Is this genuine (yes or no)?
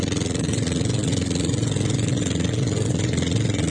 no